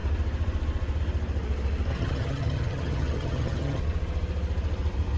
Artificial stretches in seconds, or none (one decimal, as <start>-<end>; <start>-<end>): 1.9-3.8